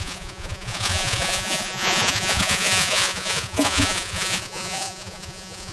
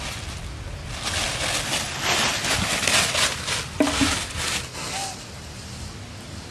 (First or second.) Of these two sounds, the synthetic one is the first